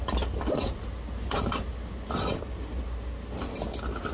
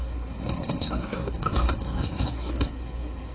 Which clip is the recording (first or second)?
first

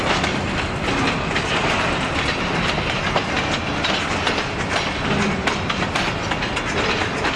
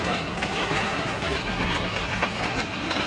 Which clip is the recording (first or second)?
first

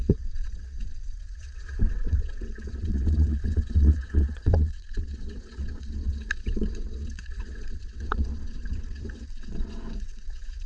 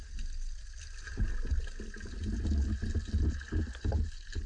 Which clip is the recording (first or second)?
second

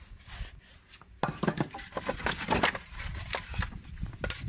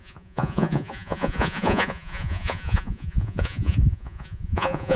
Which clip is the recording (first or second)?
first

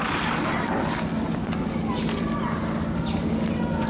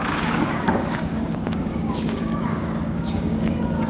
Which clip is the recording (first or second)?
first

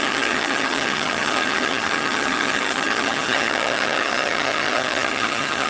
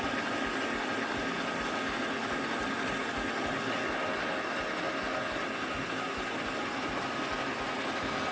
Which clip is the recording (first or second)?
second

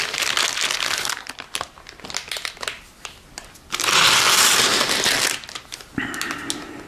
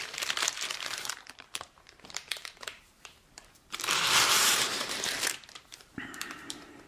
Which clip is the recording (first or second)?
first